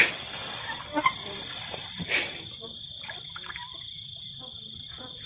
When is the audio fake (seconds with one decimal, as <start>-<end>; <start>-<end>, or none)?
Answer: 1.6-3.7